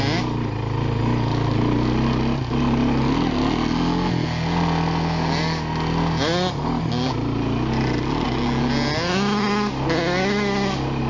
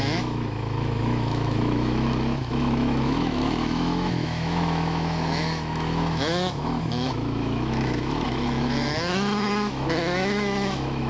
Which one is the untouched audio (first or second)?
first